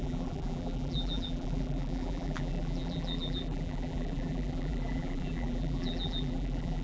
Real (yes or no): no